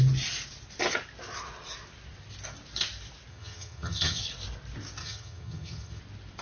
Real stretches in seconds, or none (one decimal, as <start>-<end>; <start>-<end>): 0.0-3.3; 4.2-5.0; 6.0-6.4

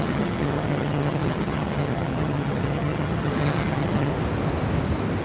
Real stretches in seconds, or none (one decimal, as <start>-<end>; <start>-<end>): 4.1-5.2

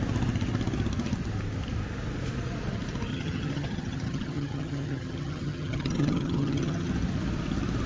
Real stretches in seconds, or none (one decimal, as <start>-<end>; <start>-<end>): 0.0-3.1; 6.9-7.9

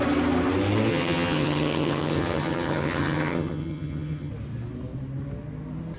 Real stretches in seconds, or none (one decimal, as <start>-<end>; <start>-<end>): 0.0-0.9; 4.3-6.0